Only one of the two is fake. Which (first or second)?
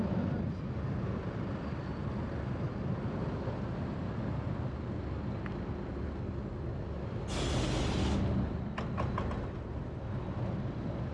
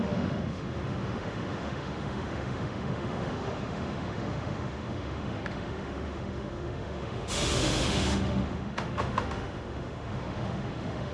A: second